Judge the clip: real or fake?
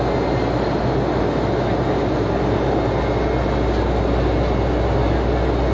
real